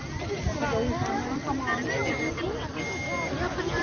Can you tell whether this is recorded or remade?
recorded